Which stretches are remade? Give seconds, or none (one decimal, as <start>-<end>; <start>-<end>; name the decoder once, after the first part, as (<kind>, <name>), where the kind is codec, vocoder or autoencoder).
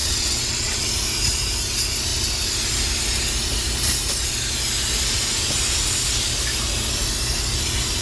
0.0-0.9 (vocoder, WaveNeXt)